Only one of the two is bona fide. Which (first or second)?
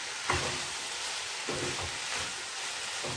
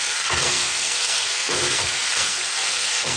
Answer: first